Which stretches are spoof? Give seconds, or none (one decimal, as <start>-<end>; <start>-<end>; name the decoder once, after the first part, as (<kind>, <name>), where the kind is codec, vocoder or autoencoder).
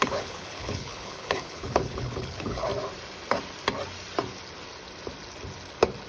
0.0-2.7 (codec, HILCodec)